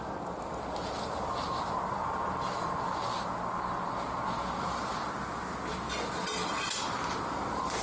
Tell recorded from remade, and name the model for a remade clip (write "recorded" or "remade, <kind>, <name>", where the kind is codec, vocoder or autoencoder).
recorded